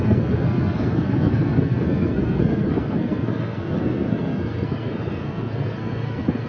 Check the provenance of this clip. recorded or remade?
remade